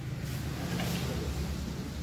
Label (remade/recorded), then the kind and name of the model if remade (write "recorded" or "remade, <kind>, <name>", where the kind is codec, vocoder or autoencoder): recorded